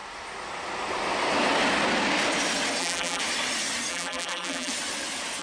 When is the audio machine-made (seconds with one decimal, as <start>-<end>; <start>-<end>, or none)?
2.8-3.2; 3.9-4.7